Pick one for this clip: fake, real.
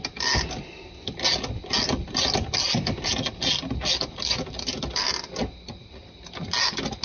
real